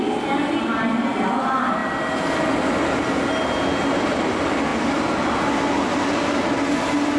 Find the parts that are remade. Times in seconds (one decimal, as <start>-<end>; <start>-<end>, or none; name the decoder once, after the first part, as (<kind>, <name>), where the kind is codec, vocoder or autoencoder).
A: none